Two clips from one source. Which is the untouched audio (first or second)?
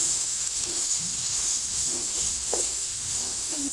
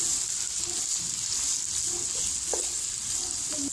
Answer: second